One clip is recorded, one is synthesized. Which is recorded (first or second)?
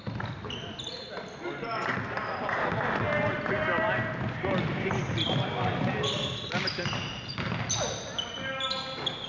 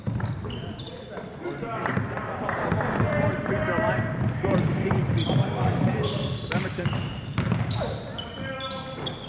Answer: first